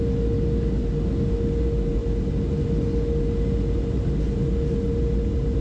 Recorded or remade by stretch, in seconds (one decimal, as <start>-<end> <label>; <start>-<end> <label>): 0.0-5.6 recorded